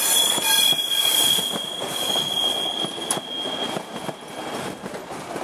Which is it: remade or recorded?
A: recorded